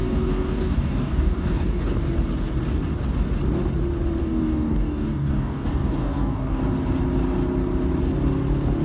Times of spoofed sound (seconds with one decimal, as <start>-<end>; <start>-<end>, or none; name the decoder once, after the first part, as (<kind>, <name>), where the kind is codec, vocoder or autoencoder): 0.0-1.8 (codec, DAC); 4.2-6.6